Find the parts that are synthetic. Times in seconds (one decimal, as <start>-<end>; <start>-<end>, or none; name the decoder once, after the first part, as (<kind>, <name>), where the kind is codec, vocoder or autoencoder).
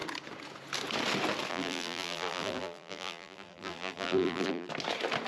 1.5-4.7 (vocoder, BigVGAN v2)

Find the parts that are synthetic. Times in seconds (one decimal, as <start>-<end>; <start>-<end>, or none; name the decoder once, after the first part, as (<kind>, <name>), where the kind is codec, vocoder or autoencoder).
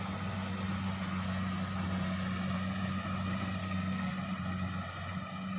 3.6-4.1 (codec, SNAC)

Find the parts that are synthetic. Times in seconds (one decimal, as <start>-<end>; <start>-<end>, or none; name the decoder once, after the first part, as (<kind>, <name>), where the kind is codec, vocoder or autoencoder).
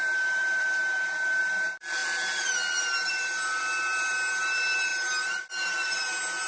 0.0-0.8 (vocoder, BigVGAN v2); 1.4-2.0; 3.1-4.9; 5.5-6.5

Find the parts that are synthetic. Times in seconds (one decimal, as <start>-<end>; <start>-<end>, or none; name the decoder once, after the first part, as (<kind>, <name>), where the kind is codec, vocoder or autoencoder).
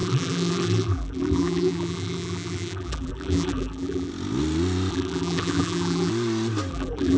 0.0-4.1 (vocoder, BigVGAN v2); 4.9-6.1; 6.7-7.2